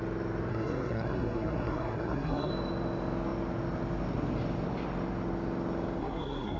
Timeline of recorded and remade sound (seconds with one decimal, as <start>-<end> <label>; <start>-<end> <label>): 0.0-0.5 recorded; 0.5-2.5 remade; 2.5-6.0 recorded; 6.0-6.6 remade